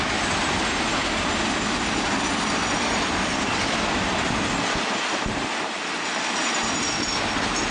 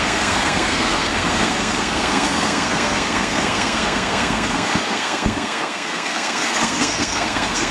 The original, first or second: first